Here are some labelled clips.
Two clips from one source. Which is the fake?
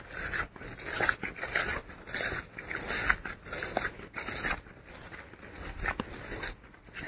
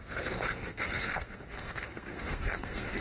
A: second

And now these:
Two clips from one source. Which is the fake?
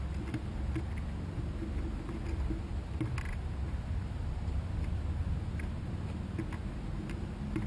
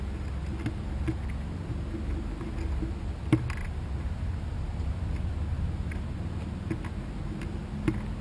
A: first